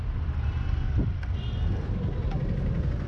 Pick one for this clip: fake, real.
real